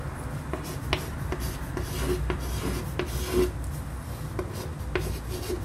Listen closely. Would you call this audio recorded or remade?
recorded